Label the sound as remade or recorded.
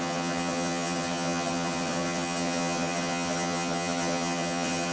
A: remade